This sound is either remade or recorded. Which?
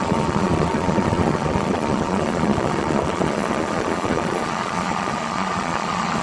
remade